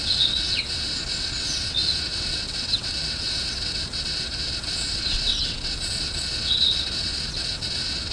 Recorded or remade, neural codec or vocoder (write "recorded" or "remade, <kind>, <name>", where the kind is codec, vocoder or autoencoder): remade, vocoder, WaveNeXt